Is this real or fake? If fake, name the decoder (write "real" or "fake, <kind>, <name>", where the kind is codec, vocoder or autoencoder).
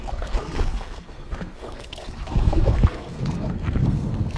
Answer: fake, codec, SNAC